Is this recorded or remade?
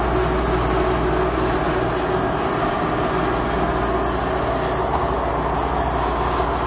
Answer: recorded